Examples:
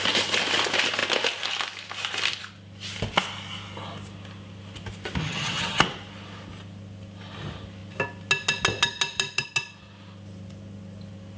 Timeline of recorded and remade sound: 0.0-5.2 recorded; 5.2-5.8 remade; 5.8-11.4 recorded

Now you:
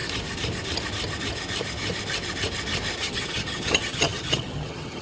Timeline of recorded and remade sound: 0.0-3.0 recorded; 3.0-5.0 remade

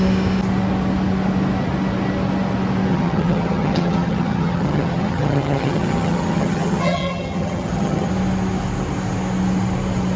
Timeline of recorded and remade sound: 0.0-2.9 recorded; 2.9-8.1 remade; 8.1-10.2 recorded

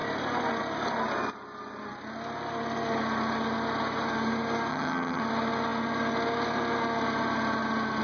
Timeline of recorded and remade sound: 0.0-4.7 recorded; 4.7-5.2 remade; 5.2-8.0 recorded

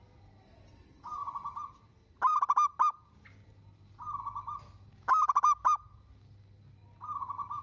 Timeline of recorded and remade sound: 0.0-7.6 recorded

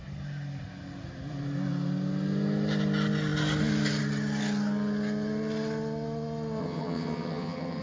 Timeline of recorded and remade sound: 0.0-6.6 recorded; 6.6-7.8 remade